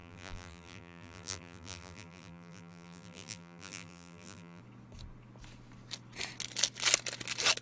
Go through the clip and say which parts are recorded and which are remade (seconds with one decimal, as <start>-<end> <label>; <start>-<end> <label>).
0.0-4.6 remade; 4.6-7.6 recorded